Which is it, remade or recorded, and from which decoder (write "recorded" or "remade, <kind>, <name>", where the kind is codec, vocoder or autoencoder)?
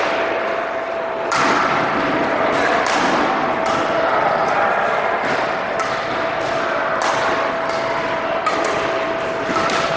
remade, vocoder, BigVGAN v2